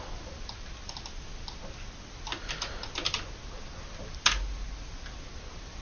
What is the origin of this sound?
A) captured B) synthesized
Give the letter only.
A